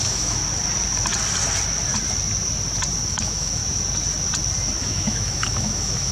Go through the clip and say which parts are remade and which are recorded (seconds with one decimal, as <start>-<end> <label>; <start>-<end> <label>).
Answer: 0.0-0.4 remade; 0.4-3.1 recorded; 3.1-3.6 remade; 3.6-4.8 recorded; 4.8-6.1 remade